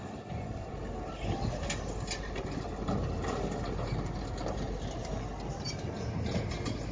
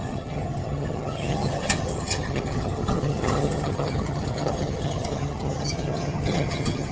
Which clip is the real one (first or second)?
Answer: first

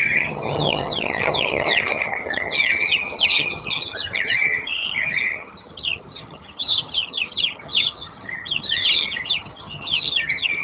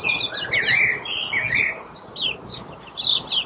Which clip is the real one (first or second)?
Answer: second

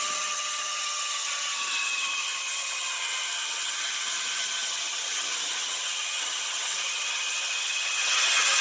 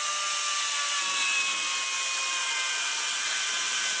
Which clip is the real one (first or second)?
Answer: second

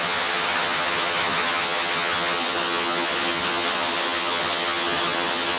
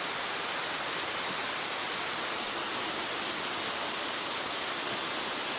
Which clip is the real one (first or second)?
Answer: second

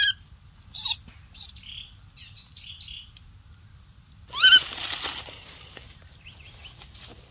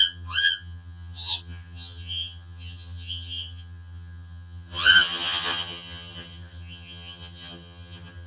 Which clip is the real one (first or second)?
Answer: first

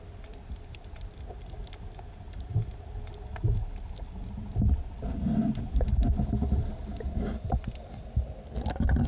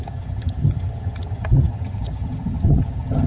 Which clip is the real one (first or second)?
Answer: first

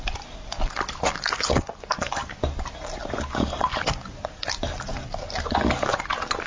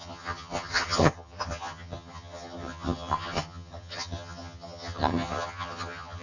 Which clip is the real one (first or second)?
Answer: first